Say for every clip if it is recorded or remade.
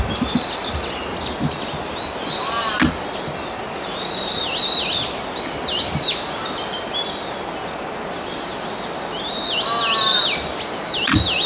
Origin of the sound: recorded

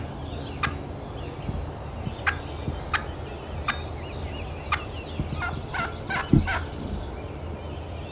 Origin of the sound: recorded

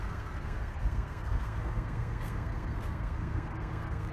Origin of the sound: remade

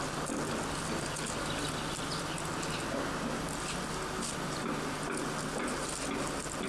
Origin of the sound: recorded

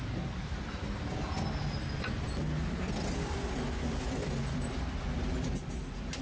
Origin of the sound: recorded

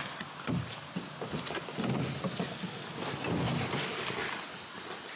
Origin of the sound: recorded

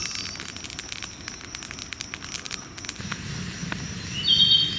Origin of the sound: recorded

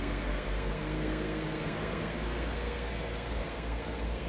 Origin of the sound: remade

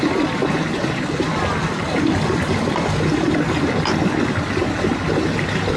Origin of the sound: recorded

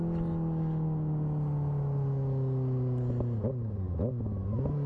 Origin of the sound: recorded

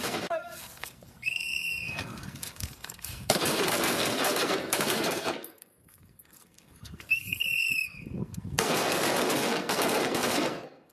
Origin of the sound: remade